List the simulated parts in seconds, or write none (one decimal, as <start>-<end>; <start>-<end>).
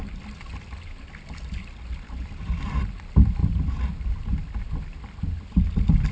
none